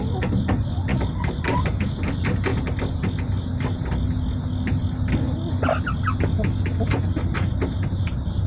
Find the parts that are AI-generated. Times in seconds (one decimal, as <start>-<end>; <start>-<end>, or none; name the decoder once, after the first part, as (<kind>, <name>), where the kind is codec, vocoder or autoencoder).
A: 0.9-1.6 (vocoder, BigVGAN v2)